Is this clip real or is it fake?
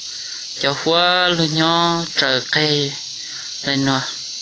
real